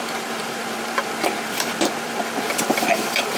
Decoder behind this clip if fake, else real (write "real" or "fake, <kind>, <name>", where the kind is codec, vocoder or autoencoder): fake, vocoder, BigVGAN v2